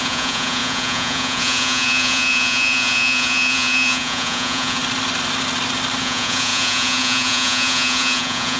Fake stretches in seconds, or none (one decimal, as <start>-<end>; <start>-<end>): 0.0-4.8; 6.0-8.6

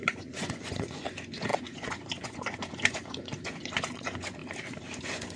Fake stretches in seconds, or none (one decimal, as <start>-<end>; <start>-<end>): 0.0-4.4; 5.0-5.4

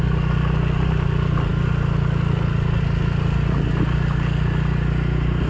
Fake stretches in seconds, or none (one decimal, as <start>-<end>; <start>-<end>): none

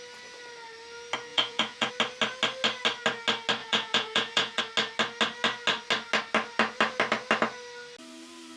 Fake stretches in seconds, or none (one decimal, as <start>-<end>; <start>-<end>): 1.3-1.9; 3.6-4.6

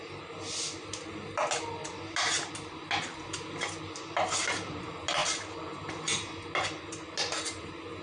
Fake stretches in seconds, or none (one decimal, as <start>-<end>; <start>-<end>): none

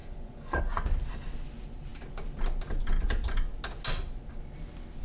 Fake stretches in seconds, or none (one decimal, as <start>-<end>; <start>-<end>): 0.0-0.6

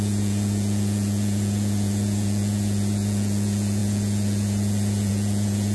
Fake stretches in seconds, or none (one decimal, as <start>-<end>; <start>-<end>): 0.0-5.7

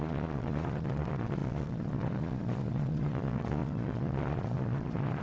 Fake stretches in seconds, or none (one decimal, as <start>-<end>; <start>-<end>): 0.0-5.2